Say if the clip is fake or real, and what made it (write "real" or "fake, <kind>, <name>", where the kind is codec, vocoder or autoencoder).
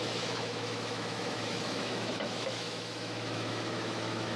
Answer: fake, autoencoder, DAC-VAE